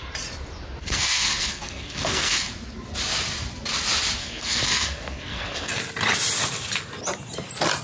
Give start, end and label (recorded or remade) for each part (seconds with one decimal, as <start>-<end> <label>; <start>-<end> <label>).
0.0-0.8 recorded; 0.8-2.5 remade; 2.5-4.2 recorded; 4.2-5.8 remade; 5.8-7.8 recorded